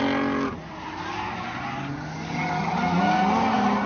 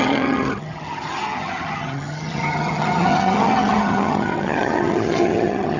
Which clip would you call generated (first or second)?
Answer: second